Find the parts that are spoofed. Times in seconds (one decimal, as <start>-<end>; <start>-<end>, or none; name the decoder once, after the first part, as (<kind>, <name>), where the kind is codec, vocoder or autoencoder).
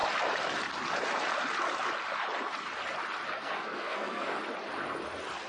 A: 3.3-4.3 (codec, SNAC)